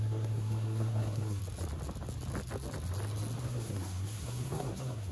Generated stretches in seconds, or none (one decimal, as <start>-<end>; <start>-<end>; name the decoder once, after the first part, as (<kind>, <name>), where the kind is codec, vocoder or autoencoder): 0.0-1.4 (codec, SNAC); 3.4-5.1

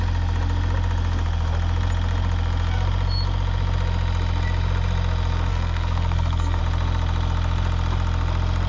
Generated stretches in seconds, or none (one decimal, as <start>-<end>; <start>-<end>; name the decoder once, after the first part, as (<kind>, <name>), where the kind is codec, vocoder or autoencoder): 5.5-6.6 (codec, SNAC)